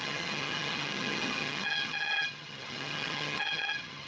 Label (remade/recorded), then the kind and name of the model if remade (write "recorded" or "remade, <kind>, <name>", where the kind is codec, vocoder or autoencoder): remade, vocoder, HiFi-GAN